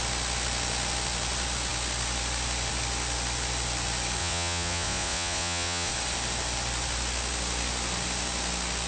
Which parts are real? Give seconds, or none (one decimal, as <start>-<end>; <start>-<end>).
0.0-4.2; 5.9-8.9